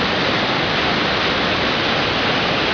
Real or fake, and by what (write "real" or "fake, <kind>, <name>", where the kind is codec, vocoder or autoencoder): real